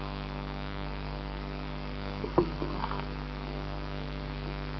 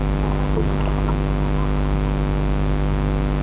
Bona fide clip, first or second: second